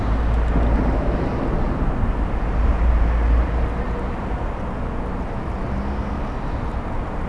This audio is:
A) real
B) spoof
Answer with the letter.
A